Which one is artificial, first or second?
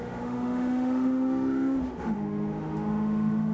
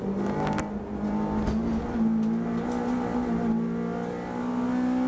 first